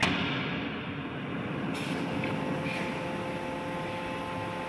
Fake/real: real